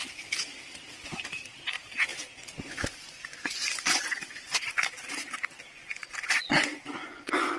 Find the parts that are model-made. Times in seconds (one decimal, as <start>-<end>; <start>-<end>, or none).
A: 2.1-4.9; 5.7-7.6